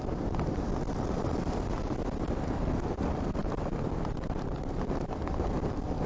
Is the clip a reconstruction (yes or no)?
yes